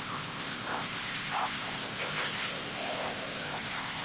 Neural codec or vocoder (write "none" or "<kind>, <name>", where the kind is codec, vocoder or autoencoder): codec, ZipCodec